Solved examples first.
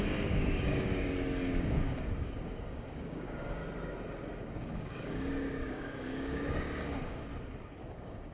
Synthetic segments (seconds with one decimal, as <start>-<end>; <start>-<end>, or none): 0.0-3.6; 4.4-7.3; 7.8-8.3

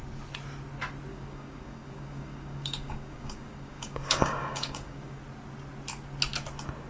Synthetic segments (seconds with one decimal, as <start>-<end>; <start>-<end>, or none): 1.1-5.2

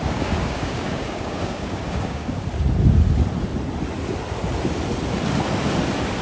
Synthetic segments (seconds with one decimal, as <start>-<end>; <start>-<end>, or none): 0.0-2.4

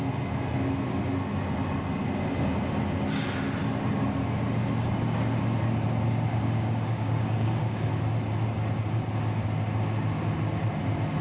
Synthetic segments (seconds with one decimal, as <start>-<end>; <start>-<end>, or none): 6.3-7.9

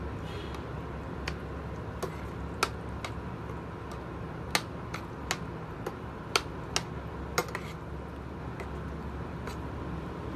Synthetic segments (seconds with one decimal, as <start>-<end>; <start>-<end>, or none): none

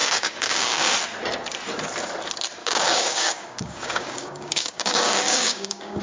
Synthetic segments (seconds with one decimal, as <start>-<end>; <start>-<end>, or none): 0.0-0.9; 2.6-6.0